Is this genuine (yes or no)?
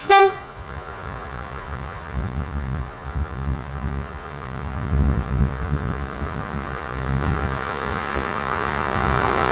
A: no